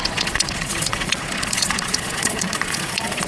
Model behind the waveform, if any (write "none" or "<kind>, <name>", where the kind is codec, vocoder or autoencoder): vocoder, Vocos